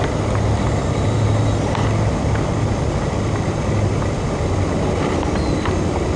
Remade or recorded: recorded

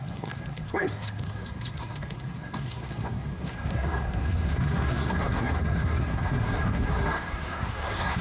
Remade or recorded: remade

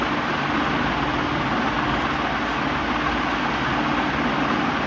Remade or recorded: recorded